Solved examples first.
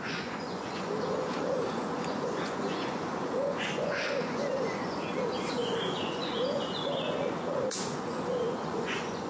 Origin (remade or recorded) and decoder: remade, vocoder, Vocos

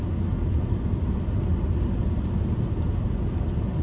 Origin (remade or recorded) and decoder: recorded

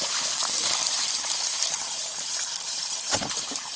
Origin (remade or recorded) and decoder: remade, vocoder, BigVGAN v2